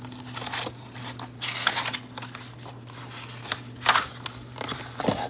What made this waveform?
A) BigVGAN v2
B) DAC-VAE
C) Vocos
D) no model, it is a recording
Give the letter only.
D